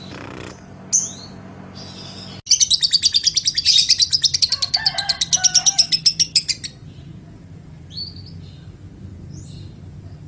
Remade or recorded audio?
recorded